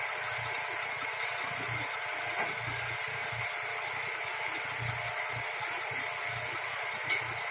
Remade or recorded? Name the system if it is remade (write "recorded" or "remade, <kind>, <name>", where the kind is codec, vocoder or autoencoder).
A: recorded